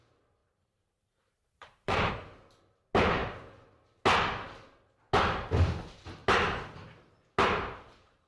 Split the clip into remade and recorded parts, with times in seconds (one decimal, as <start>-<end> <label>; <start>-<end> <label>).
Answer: 0.0-0.4 recorded; 0.4-2.1 remade; 2.1-8.3 recorded